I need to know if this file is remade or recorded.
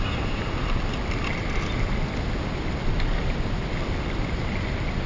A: recorded